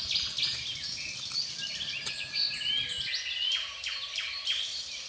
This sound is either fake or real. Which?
real